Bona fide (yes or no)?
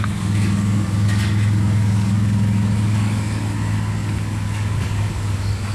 no